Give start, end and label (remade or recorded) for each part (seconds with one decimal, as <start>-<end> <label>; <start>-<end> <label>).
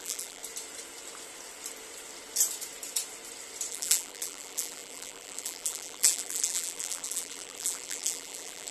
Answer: 0.0-0.4 remade; 0.4-3.7 recorded; 3.7-8.7 remade